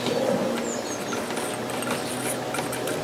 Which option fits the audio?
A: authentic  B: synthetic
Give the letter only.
A